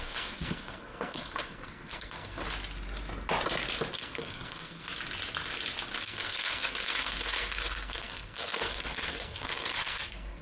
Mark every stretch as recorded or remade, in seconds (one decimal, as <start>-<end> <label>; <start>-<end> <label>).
0.0-2.4 remade; 2.4-3.9 recorded; 3.9-4.9 remade; 4.9-6.0 recorded; 6.0-10.4 remade